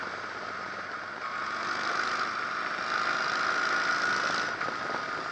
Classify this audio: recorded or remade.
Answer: recorded